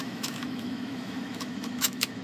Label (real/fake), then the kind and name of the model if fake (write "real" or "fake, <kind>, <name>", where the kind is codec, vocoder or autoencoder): fake, autoencoder, DAC-VAE